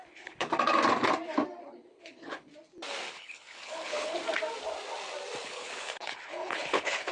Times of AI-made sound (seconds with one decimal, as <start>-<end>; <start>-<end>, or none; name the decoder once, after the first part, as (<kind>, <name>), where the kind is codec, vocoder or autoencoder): 0.0-0.5 (codec, HILCodec); 1.6-2.5; 3.1-4.2; 5.4-7.1